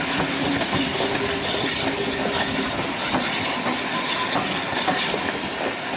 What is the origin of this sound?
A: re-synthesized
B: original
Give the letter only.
B